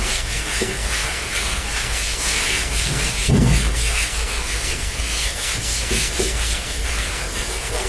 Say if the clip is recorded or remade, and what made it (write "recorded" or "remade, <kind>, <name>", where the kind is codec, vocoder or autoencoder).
remade, codec, SNAC